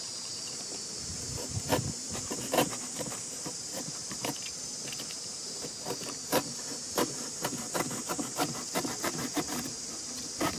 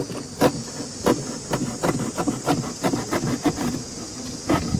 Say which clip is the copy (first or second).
first